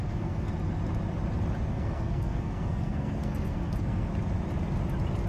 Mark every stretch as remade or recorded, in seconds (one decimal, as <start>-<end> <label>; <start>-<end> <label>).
0.0-0.5 remade; 0.5-1.7 recorded; 1.7-4.1 remade; 4.1-5.3 recorded